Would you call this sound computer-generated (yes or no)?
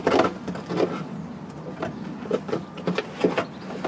no